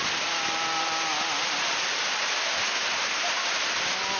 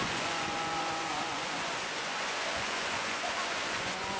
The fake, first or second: second